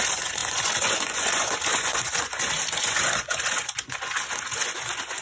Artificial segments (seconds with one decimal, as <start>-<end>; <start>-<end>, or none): 0.0-5.2

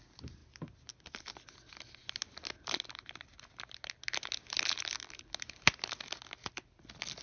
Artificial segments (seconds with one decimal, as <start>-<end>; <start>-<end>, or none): none

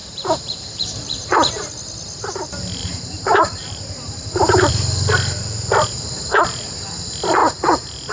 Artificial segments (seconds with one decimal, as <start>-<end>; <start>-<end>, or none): 0.0-1.7; 2.8-4.7

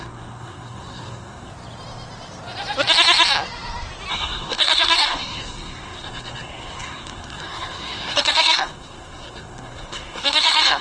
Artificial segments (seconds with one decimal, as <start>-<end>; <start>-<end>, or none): 0.0-1.5; 4.1-10.8

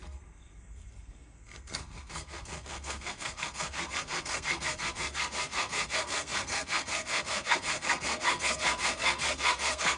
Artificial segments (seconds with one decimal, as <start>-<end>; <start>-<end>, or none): 0.0-10.0